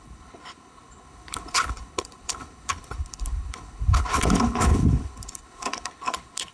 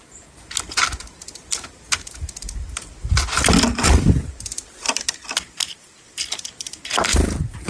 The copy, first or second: first